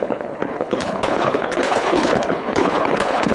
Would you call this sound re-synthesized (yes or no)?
yes